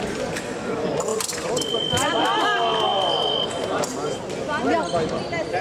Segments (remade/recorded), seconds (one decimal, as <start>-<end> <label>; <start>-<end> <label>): 0.0-5.6 recorded

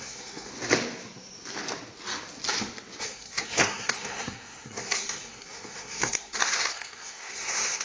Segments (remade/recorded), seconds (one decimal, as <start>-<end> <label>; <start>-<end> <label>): 0.0-0.5 remade; 0.5-3.0 recorded; 3.0-7.8 remade

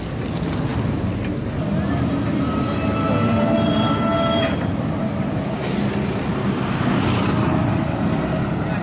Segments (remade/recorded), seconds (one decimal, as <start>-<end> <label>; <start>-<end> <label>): 0.0-6.4 recorded; 6.4-7.2 remade; 7.2-8.8 recorded